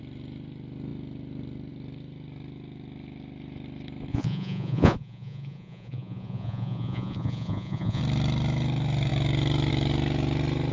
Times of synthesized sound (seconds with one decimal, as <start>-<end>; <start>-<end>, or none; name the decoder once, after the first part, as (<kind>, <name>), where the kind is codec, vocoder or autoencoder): 4.1-8.0 (vocoder, Vocos)